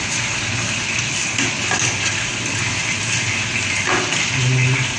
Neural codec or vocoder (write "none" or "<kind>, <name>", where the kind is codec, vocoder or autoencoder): none